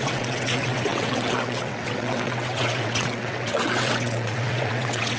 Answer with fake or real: fake